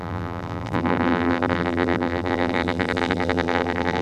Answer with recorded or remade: remade